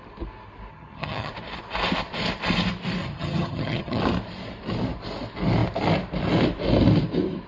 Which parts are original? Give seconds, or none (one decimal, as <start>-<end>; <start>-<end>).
0.0-0.7; 1.3-3.0; 4.0-7.5

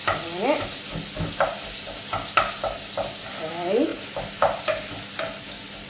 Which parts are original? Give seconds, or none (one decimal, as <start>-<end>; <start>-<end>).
0.0-5.9